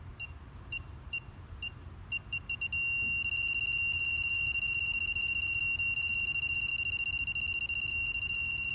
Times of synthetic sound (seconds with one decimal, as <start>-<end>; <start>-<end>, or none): 0.0-2.7; 3.9-6.7; 7.9-8.7